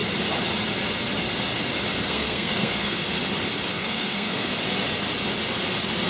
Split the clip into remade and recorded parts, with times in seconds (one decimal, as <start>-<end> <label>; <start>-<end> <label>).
0.0-2.1 recorded; 2.1-3.0 remade; 3.0-3.7 recorded; 3.7-4.5 remade; 4.5-6.1 recorded